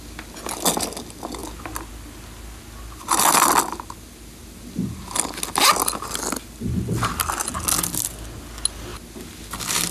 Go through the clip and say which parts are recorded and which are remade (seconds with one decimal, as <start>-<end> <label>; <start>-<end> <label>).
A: 0.0-9.9 recorded